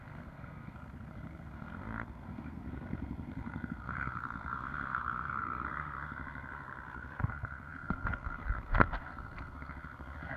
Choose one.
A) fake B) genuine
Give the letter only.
A